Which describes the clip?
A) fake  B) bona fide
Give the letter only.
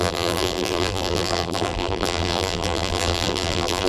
A